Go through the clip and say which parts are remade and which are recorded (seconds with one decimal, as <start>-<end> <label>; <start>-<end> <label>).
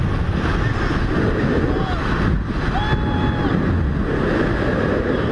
0.0-5.3 recorded